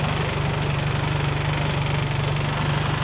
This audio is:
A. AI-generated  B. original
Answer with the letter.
B